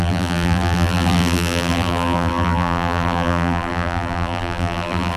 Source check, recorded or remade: remade